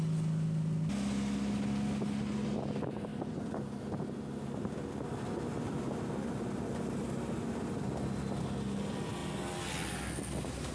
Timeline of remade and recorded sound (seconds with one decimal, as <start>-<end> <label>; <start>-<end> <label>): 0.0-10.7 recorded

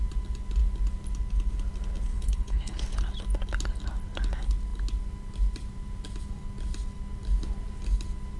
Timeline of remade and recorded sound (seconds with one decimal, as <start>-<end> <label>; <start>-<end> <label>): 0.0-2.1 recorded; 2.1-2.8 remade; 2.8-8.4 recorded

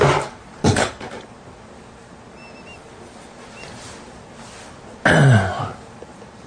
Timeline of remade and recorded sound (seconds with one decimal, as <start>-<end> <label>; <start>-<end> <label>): 0.0-0.6 recorded; 0.6-1.1 remade; 1.1-6.5 recorded

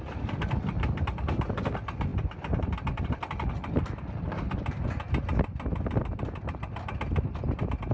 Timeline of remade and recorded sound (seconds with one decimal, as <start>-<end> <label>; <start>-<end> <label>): 0.0-7.9 recorded

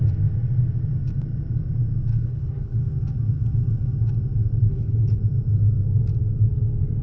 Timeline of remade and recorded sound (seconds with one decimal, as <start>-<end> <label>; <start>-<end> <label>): 0.0-2.1 recorded; 2.1-2.8 remade; 2.8-4.7 recorded; 4.7-5.2 remade; 5.2-7.0 recorded

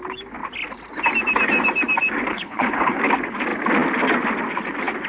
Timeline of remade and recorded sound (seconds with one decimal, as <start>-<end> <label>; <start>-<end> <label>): 0.0-2.3 recorded; 2.3-3.0 remade; 3.0-5.1 recorded